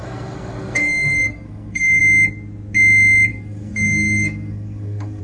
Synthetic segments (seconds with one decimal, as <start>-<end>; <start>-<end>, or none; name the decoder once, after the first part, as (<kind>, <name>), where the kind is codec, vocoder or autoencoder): 0.0-2.0 (codec, SNAC); 3.3-5.2